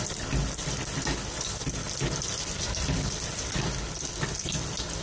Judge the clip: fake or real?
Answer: real